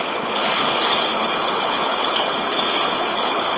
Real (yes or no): no